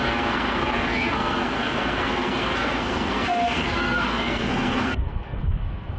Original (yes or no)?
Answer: no